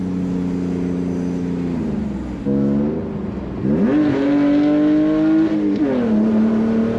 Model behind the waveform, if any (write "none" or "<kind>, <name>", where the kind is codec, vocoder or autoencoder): none